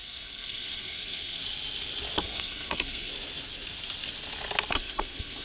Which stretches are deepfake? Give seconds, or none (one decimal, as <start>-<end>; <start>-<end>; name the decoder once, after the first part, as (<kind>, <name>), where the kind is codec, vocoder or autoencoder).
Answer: 0.0-1.4 (codec, SNAC); 2.2-3.1; 4.7-5.4